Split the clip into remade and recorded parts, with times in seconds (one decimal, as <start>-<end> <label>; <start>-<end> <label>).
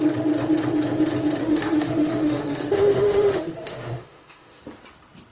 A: 0.0-1.4 recorded; 1.4-4.6 remade; 4.6-5.3 recorded